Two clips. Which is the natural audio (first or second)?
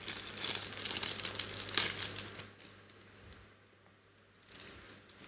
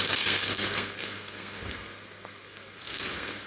first